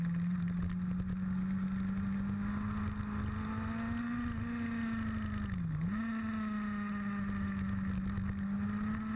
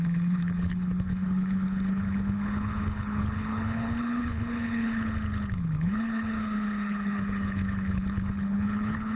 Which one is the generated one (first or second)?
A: second